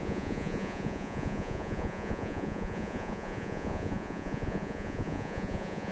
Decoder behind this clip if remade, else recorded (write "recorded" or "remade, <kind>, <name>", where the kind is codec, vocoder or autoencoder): remade, vocoder, Vocos